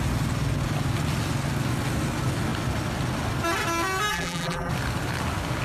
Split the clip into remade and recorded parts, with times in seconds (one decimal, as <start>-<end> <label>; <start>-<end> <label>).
0.0-4.1 recorded; 4.1-4.7 remade; 4.7-5.6 recorded